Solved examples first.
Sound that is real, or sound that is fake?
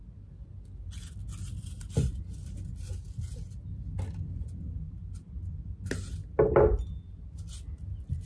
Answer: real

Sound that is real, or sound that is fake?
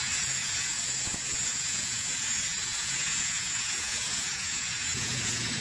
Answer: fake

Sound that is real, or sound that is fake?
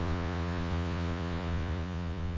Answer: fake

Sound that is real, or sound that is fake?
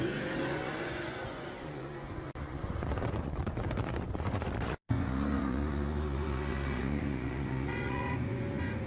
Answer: fake